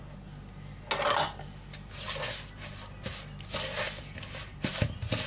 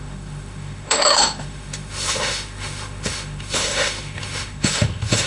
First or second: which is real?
first